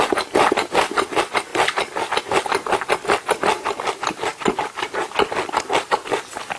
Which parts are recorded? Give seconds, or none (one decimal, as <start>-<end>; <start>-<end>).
0.0-6.6